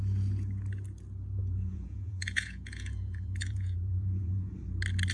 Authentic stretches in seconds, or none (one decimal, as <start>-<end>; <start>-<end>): 0.0-1.4; 4.5-5.1